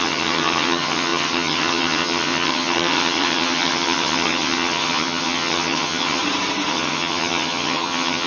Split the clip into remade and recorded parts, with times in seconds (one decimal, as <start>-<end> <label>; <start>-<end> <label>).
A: 0.0-6.2 remade; 6.2-6.7 recorded; 6.7-8.3 remade